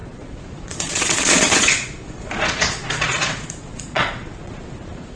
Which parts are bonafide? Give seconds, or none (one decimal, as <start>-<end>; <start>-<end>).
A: none